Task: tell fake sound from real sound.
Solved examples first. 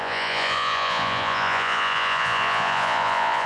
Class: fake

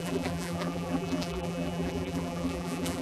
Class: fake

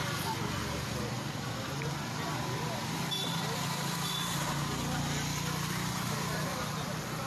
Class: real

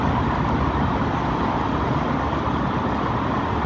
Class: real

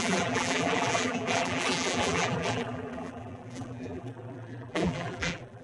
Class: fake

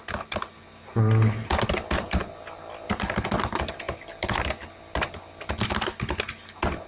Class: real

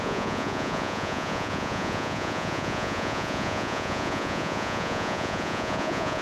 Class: fake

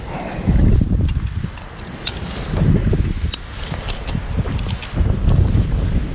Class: real